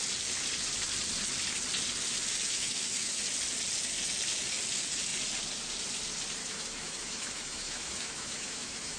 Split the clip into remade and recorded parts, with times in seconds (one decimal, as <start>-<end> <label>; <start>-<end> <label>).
0.0-2.4 recorded; 2.4-3.2 remade; 3.2-6.4 recorded; 6.4-9.0 remade